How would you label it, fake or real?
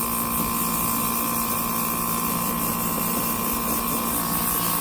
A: real